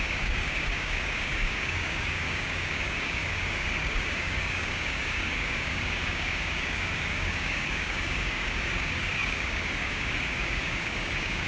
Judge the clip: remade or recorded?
remade